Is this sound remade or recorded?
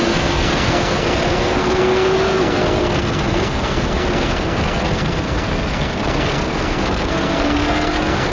remade